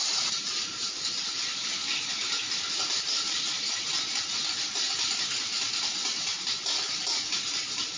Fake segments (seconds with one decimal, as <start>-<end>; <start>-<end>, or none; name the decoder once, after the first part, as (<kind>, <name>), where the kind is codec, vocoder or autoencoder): none

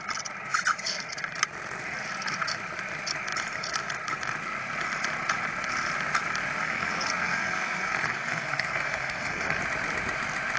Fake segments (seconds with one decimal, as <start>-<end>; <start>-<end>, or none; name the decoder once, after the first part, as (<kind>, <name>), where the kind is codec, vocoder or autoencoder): 6.6-9.6 (codec, SNAC)

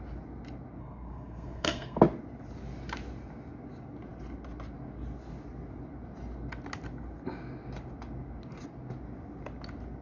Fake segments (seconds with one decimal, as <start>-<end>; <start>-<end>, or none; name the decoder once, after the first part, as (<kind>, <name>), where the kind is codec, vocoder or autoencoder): 0.8-2.0 (codec, SNAC)

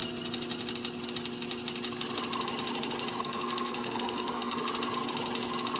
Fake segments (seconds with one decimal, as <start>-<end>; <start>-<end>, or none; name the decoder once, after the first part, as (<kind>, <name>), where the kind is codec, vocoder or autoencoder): 3.2-4.6 (codec, SNAC)

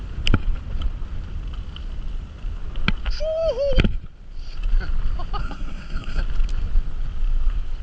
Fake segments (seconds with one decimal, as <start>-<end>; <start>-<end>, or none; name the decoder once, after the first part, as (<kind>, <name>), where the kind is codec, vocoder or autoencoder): 5.4-6.2 (codec, SNAC)

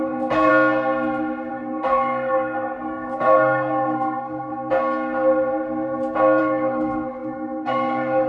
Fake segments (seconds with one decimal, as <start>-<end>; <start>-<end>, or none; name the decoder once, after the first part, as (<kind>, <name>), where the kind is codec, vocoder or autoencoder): 0.0-0.5 (codec, SNAC); 1.5-4.5; 6.4-8.3

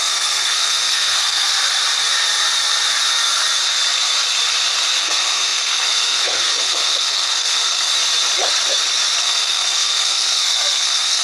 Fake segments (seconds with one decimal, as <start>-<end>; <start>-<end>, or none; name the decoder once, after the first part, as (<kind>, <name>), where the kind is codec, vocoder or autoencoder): 0.0-1.5 (codec, SNAC); 5.0-7.9; 9.2-11.2

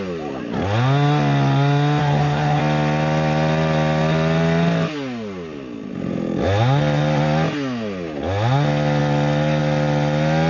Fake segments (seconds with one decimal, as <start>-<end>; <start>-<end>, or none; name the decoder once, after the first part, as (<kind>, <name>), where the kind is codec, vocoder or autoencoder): 2.0-2.6 (codec, SNAC)